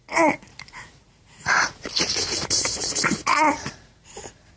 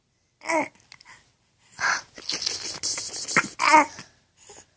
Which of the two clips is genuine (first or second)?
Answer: second